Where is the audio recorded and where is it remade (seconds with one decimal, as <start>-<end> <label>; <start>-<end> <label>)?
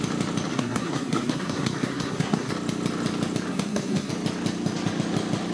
0.0-0.5 recorded; 0.5-2.5 remade; 2.5-3.5 recorded; 3.5-4.1 remade; 4.1-5.5 recorded